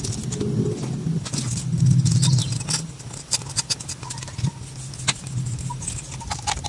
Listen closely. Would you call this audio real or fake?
real